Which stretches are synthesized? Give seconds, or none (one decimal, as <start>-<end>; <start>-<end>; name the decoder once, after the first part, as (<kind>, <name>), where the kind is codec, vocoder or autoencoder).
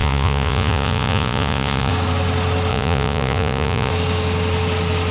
0.0-1.9 (vocoder, Vocos); 2.7-3.9